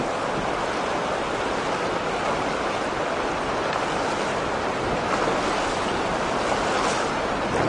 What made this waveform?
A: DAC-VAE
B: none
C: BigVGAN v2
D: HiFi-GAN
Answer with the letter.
B